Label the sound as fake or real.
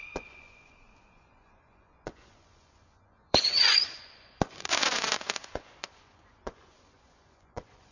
fake